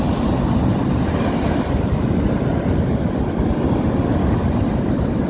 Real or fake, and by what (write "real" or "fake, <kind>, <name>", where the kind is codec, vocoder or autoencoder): real